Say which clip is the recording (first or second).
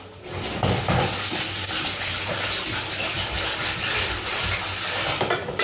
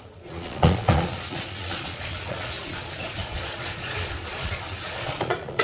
first